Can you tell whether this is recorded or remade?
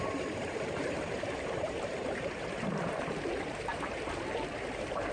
remade